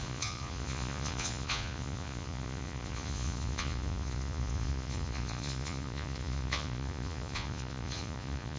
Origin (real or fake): fake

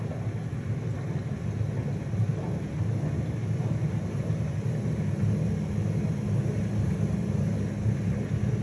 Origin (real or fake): real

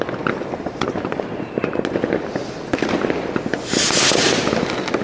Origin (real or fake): real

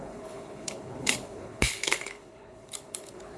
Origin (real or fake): fake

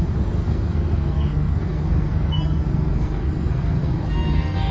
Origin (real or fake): fake